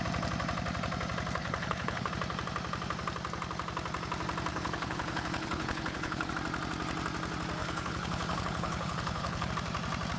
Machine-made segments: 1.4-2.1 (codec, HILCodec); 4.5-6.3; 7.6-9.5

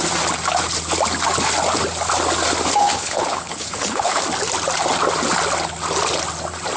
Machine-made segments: 2.8-4.2 (codec, HILCodec)

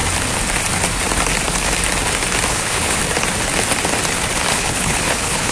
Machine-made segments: 2.5-3.0 (codec, HILCodec); 4.5-5.5

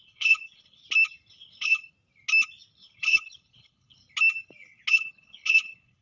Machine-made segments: 0.0-0.8 (codec, HILCodec); 1.3-1.8; 2.8-4.0; 4.9-6.0

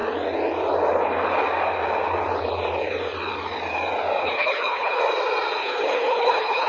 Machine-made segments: 4.2-5.0 (codec, HILCodec); 5.6-6.7